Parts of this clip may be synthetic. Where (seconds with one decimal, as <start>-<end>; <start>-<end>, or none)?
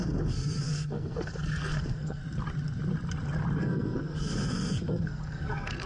0.0-2.2; 3.6-5.9